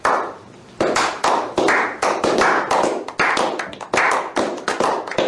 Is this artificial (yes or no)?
no